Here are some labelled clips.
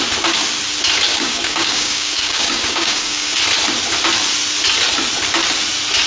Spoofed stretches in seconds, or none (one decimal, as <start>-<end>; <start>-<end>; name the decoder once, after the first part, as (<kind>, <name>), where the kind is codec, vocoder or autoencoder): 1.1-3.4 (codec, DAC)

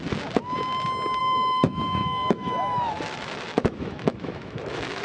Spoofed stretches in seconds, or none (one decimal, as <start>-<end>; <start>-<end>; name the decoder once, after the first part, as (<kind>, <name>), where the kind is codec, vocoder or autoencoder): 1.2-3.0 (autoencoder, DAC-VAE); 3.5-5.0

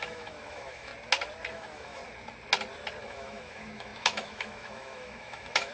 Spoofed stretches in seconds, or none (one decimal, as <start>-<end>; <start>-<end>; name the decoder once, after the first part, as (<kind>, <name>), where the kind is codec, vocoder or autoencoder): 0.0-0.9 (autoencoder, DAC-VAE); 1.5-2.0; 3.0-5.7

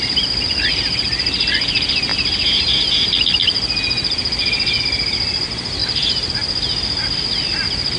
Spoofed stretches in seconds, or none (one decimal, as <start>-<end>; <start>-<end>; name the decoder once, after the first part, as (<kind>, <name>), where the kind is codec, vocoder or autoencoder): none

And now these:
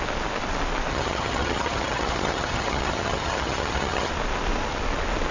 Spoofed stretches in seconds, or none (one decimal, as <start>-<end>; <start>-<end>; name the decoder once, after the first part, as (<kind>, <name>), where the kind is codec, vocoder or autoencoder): 0.9-4.1 (vocoder, HiFi-GAN)

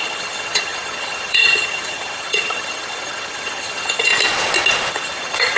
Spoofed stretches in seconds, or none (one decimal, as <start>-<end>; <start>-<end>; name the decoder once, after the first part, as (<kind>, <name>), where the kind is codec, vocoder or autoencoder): 0.0-4.1 (vocoder, HiFi-GAN); 4.9-5.6

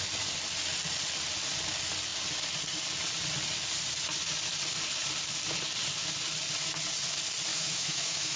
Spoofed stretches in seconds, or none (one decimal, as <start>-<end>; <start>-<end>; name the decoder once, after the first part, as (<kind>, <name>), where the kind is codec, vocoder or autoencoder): 7.5-8.4 (autoencoder, DAC-VAE)

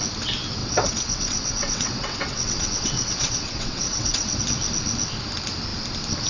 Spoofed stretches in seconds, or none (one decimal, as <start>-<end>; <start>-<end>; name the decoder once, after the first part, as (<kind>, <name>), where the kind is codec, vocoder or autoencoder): 0.6-4.4 (vocoder, WaveNeXt)